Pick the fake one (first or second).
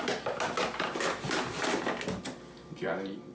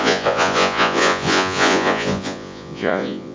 second